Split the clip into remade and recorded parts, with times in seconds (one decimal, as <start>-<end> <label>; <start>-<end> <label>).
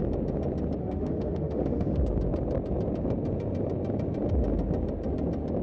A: 0.0-0.8 recorded; 0.8-2.0 remade; 2.0-5.6 recorded